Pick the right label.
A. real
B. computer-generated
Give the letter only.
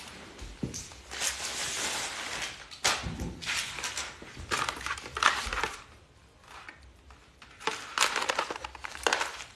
A